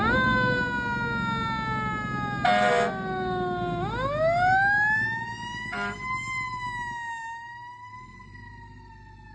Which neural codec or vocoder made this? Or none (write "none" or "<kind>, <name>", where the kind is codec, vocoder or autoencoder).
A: none